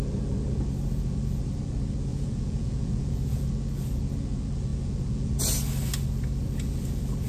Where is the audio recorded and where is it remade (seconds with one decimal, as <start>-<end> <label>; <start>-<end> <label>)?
0.0-2.1 recorded; 2.1-3.5 remade; 3.5-7.3 recorded